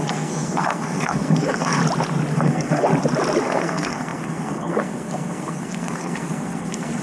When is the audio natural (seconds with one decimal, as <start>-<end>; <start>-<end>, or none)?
1.8-2.3; 2.9-3.4